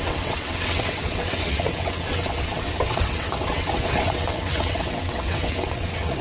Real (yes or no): no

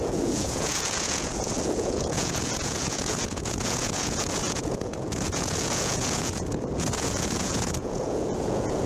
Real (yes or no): no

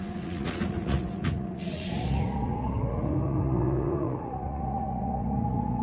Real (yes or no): no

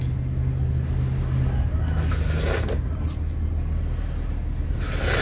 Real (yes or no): yes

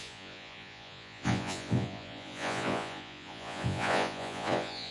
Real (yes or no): no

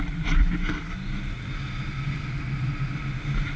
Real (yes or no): yes